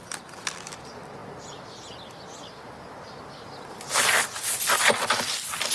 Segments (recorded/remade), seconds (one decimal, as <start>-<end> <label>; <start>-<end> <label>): 0.0-5.7 recorded